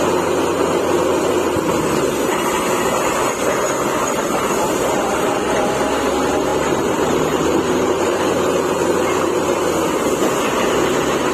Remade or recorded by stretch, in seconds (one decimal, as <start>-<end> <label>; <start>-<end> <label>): 0.0-0.5 recorded; 0.5-2.5 remade; 2.5-6.5 recorded; 6.5-9.6 remade; 9.6-11.3 recorded